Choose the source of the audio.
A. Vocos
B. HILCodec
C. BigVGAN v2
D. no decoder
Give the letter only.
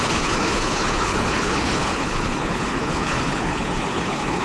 B